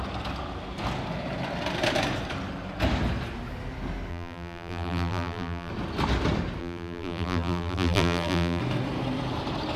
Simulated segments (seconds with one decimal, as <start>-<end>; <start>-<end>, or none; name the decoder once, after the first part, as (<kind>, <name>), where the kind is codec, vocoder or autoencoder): 4.1-5.7 (vocoder, BigVGAN v2); 6.6-8.6

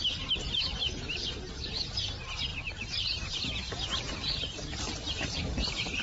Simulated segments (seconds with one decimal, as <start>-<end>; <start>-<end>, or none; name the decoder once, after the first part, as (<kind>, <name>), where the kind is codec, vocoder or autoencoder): 2.5-5.4 (vocoder, BigVGAN v2)

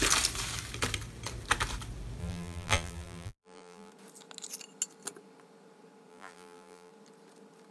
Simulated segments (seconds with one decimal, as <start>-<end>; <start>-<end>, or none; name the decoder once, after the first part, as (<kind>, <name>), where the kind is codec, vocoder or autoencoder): 2.2-3.9 (vocoder, BigVGAN v2); 6.1-6.9

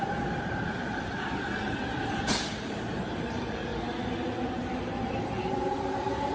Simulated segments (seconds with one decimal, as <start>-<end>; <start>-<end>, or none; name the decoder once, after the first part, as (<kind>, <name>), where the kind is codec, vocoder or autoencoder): 0.0-3.7 (vocoder, BigVGAN v2); 5.2-6.3